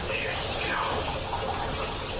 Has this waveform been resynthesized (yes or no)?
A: no